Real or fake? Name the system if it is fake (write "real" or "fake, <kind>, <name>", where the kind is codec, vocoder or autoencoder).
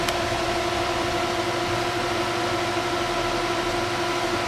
real